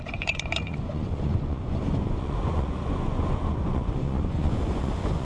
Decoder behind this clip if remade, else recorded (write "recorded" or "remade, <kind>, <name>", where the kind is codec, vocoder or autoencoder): remade, vocoder, Vocos